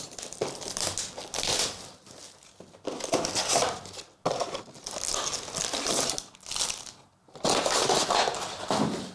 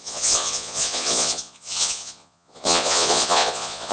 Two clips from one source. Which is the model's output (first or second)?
second